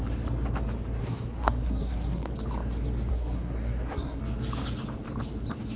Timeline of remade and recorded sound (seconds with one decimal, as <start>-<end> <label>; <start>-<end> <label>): 0.0-1.0 recorded; 1.0-2.3 remade; 2.3-3.1 recorded; 3.1-4.2 remade; 4.2-5.8 recorded